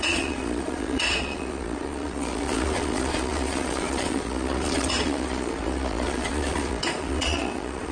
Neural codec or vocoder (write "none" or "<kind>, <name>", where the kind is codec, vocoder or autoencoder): vocoder, Vocos